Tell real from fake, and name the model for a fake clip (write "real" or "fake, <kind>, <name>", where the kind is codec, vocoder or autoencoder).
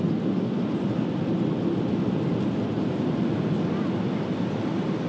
real